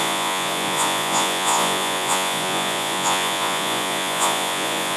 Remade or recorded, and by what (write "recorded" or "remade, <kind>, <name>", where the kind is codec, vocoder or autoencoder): remade, vocoder, Vocos